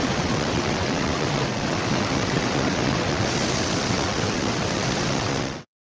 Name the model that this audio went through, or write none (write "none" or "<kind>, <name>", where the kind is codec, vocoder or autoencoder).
vocoder, WaveNeXt